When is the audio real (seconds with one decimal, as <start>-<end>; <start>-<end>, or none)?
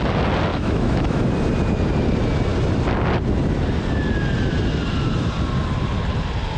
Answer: 0.0-0.5; 1.2-6.6